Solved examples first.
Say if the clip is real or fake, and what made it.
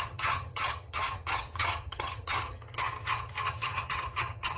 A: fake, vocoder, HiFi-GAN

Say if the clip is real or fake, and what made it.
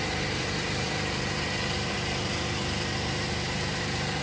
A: real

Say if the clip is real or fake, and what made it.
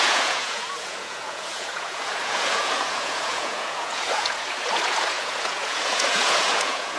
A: fake, vocoder, Vocos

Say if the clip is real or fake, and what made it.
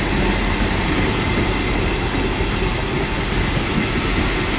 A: real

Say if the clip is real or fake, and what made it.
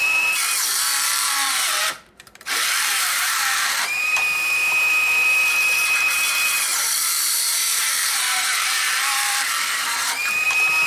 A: fake, vocoder, BigVGAN v2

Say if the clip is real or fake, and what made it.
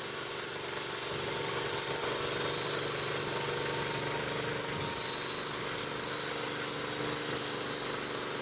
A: real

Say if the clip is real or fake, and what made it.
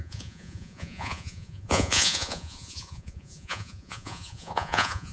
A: fake, vocoder, Vocos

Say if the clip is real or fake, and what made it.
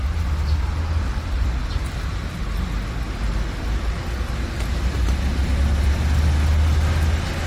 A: real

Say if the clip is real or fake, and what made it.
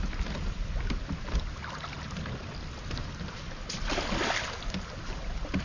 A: real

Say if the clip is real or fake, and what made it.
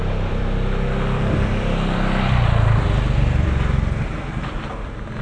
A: fake, vocoder, BigVGAN v2